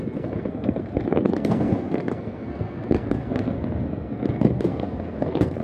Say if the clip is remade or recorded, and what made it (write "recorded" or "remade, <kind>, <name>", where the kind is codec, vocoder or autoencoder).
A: remade, codec, SNAC